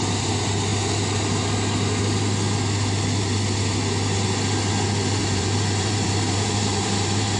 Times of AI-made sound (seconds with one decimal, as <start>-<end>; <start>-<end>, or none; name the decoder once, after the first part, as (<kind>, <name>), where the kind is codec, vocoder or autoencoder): 5.2-7.4 (vocoder, BigVGAN v2)